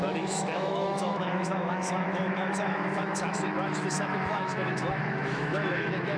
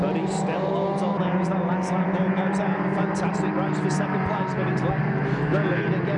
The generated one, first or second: first